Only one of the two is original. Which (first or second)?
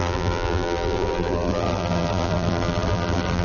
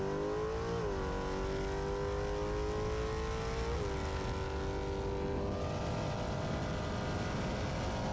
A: second